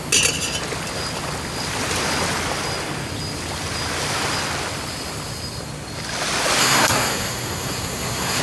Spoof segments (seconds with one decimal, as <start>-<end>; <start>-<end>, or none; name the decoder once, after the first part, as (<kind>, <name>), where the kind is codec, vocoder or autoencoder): 6.6-8.4 (codec, SNAC)